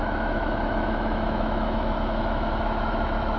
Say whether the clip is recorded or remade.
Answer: remade